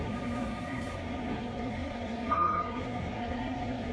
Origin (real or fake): fake